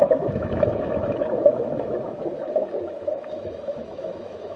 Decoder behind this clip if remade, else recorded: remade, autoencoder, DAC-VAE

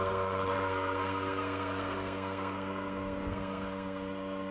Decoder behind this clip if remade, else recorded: remade, codec, SNAC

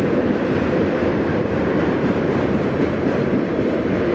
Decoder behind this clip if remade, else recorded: remade, vocoder, BigVGAN v2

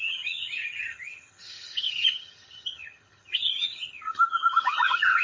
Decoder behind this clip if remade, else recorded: remade, vocoder, HiFi-GAN